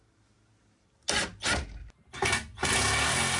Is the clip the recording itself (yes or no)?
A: yes